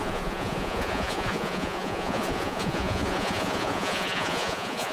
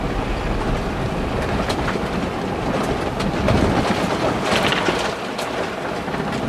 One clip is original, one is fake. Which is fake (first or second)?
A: first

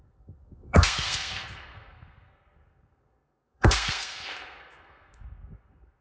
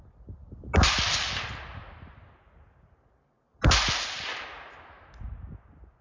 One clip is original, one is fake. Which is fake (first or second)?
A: first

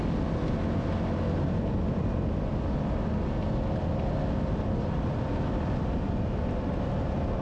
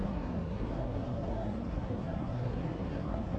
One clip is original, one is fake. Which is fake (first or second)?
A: second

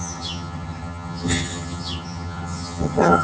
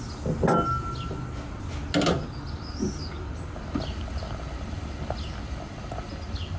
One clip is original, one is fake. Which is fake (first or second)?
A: first